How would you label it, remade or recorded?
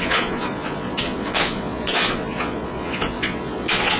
remade